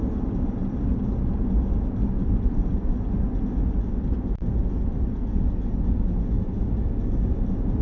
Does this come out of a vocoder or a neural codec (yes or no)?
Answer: no